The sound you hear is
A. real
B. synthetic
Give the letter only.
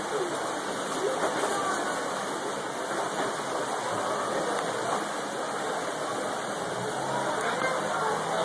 A